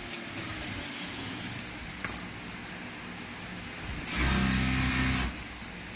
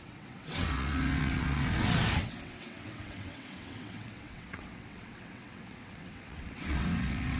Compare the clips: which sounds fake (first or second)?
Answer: second